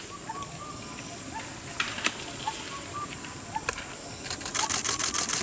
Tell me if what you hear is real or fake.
real